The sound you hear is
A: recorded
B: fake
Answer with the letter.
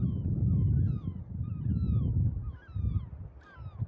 A